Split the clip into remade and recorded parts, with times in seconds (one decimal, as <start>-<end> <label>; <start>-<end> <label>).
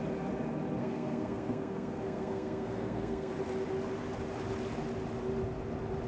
0.0-0.8 recorded; 0.8-3.3 remade; 3.3-6.1 recorded